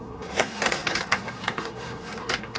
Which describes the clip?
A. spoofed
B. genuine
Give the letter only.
A